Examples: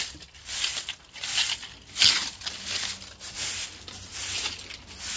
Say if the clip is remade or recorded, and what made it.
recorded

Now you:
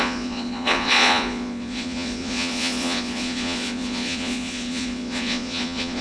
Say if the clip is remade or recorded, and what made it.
remade, vocoder, Vocos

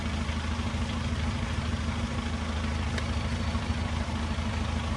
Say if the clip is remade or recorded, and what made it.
recorded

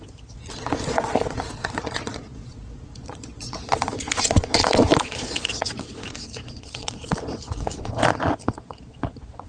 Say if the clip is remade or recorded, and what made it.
remade, vocoder, Vocos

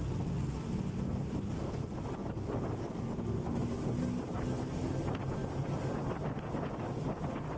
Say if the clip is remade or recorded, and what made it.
recorded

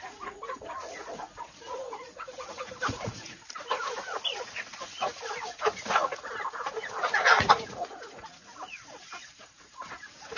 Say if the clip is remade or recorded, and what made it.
remade, vocoder, Vocos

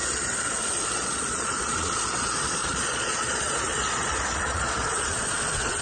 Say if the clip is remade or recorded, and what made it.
remade, vocoder, Vocos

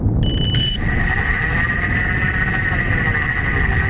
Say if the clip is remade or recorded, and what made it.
recorded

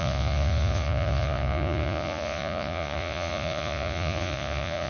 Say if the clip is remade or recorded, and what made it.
remade, vocoder, Vocos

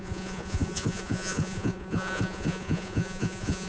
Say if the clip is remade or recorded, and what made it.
remade, vocoder, Vocos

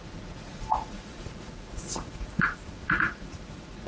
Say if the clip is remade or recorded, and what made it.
remade, vocoder, Vocos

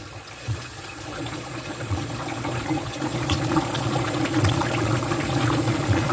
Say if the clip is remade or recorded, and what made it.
remade, vocoder, Vocos